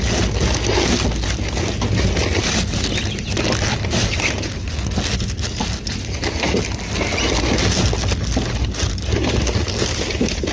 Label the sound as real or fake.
real